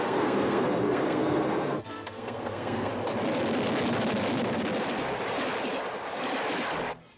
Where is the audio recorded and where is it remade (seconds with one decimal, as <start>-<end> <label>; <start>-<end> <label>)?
0.0-2.9 remade; 2.9-7.2 recorded